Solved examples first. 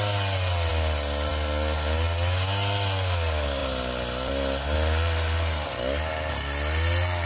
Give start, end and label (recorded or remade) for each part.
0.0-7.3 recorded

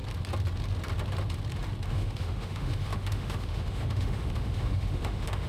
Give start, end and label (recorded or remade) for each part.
0.0-1.9 recorded; 1.9-5.5 remade